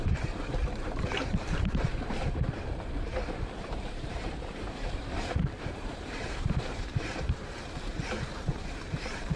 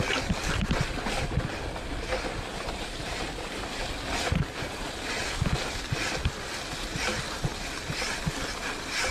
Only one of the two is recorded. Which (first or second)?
second